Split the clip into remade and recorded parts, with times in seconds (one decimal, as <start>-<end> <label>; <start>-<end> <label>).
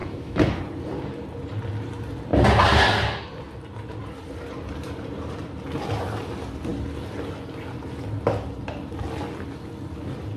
0.0-0.6 remade; 0.6-10.4 recorded